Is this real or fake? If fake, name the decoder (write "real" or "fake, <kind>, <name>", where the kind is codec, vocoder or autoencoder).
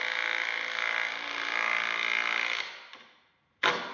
real